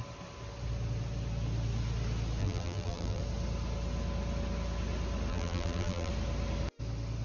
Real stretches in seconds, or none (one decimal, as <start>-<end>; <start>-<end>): 0.0-2.4; 3.2-5.3; 6.1-7.2